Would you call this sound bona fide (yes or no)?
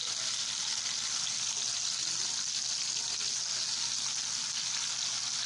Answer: yes